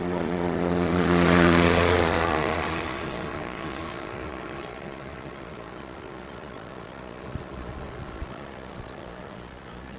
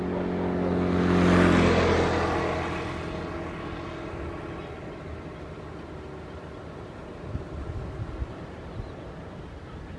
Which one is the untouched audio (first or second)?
second